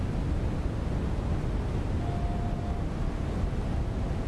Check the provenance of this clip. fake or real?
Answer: real